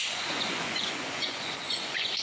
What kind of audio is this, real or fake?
fake